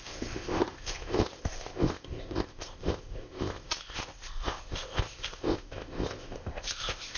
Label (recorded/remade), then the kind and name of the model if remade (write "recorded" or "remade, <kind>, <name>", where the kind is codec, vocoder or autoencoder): remade, codec, ZipCodec